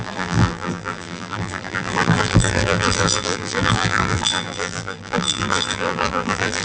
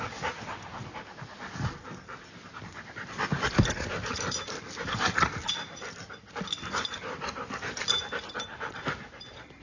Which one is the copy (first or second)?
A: first